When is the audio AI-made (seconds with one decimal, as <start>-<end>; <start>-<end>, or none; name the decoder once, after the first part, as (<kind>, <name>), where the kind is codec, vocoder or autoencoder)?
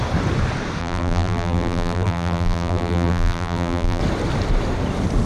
0.8-4.0 (vocoder, BigVGAN v2)